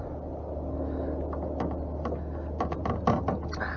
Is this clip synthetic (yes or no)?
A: no